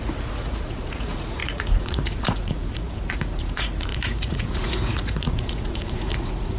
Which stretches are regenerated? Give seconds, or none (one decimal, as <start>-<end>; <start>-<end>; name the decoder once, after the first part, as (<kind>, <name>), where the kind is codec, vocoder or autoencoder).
0.0-6.6 (vocoder, Vocos)